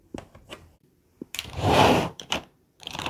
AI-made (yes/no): yes